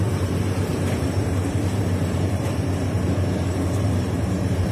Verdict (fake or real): fake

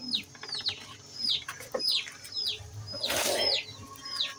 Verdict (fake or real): real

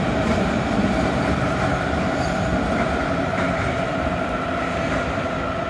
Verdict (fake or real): real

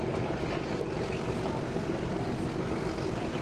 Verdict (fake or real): real